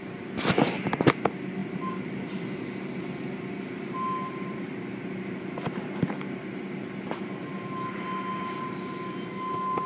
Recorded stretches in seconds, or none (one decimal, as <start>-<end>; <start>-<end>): 0.0-9.9